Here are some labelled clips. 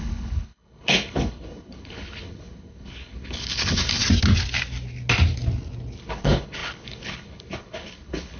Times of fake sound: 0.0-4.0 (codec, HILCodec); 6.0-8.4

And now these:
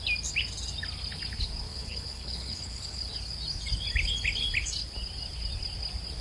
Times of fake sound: 1.7-3.1 (codec, HILCodec)

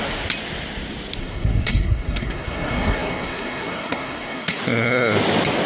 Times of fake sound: 1.2-4.6 (codec, SNAC)

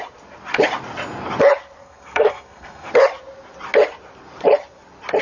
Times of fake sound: 1.8-2.9 (codec, SNAC)

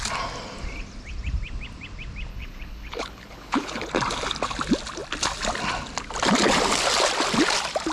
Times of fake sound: 2.3-3.9 (codec, HILCodec)